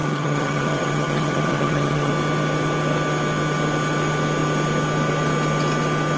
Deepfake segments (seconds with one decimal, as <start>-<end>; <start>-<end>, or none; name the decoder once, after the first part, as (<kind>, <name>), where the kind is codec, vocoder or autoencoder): 0.0-2.1 (vocoder, HiFi-GAN)